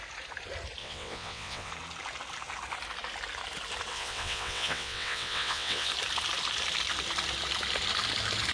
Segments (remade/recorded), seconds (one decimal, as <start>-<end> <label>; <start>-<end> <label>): 0.0-0.8 recorded; 0.8-1.7 remade; 1.7-3.9 recorded; 3.9-5.9 remade; 5.9-8.5 recorded